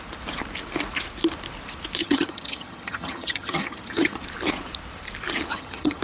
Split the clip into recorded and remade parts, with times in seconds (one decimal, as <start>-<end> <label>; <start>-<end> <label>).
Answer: 0.0-2.0 recorded; 2.0-4.2 remade; 4.2-5.5 recorded; 5.5-6.0 remade